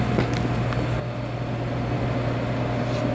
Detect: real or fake real